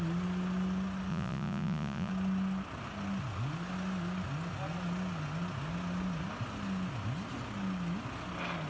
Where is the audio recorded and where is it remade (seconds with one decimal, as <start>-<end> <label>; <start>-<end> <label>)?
0.0-1.1 recorded; 1.1-2.1 remade; 2.1-8.7 recorded